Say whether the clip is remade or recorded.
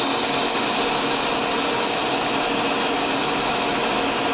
recorded